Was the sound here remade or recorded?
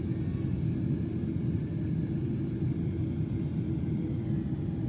recorded